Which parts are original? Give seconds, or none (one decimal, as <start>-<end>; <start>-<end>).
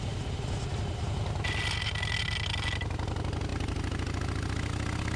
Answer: 0.0-5.2